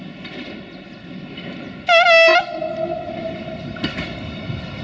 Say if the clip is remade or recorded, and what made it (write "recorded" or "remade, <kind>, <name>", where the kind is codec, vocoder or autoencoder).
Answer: recorded